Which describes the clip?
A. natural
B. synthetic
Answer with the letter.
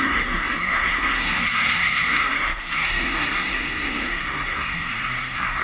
B